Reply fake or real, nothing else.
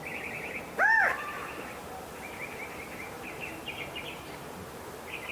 fake